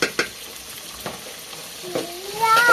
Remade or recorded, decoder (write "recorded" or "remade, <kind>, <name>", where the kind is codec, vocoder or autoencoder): recorded